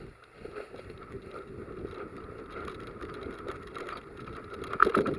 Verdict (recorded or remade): recorded